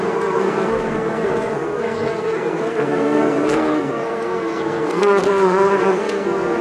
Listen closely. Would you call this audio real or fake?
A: fake